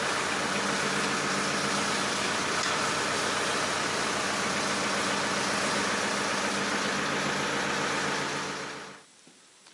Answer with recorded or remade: recorded